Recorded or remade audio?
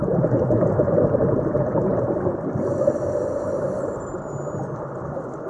remade